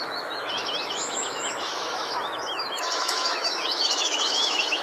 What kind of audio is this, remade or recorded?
remade